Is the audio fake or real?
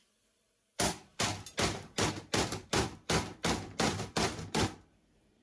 fake